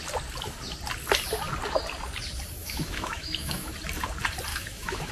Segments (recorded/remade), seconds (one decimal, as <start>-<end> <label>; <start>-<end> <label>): 0.0-2.6 recorded; 2.6-3.7 remade; 3.7-4.5 recorded; 4.5-5.1 remade

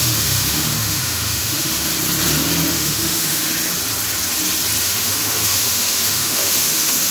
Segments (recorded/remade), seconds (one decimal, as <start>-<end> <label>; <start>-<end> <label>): 0.0-1.9 remade; 1.9-2.7 recorded; 2.7-3.5 remade; 3.5-4.8 recorded; 4.8-7.1 remade

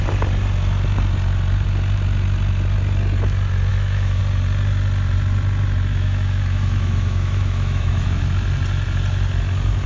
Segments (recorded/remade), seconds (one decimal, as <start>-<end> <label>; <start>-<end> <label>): 0.0-3.7 recorded; 3.7-4.2 remade; 4.2-5.9 recorded; 5.9-8.2 remade; 8.2-9.9 recorded

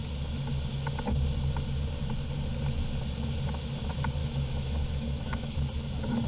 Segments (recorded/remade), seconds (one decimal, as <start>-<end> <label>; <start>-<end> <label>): 0.0-4.2 recorded; 4.2-5.6 remade; 5.6-6.3 recorded

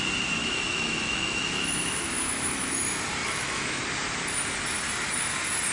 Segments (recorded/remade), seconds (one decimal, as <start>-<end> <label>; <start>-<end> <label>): 0.0-0.4 recorded; 0.4-2.7 remade; 2.7-3.2 recorded; 3.2-3.8 remade; 3.8-5.7 recorded

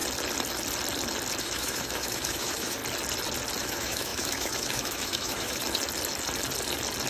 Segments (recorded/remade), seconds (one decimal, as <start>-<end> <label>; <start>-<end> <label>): 0.0-1.4 recorded; 1.4-2.8 remade; 2.8-3.6 recorded; 3.6-5.6 remade; 5.6-7.1 recorded